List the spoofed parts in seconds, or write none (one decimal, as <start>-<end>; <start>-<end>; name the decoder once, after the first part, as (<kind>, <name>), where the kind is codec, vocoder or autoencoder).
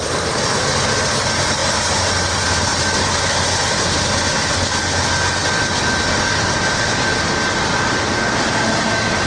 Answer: none